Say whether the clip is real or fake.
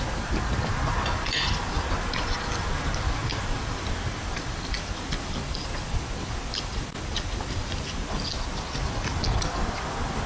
real